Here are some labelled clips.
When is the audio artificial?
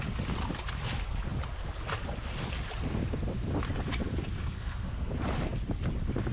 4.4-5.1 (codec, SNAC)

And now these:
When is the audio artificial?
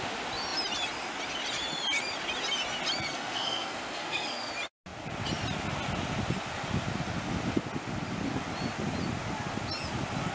3.1-4.5 (codec, SNAC)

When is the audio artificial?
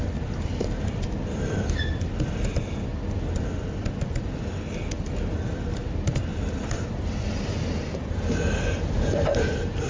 none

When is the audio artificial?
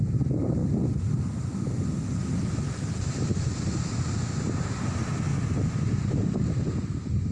none